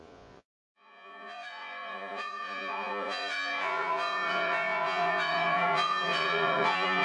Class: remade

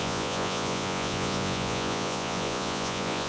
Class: remade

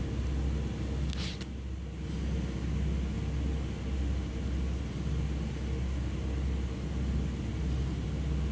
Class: recorded